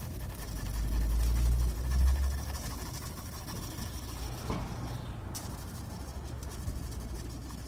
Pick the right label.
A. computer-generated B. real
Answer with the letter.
B